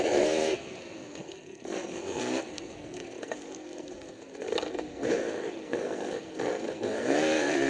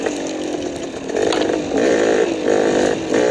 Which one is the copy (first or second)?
first